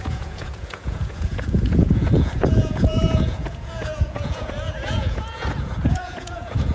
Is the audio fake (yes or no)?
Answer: yes